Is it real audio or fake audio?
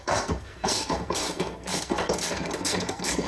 fake